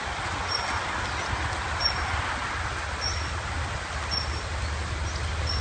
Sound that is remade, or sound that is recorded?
recorded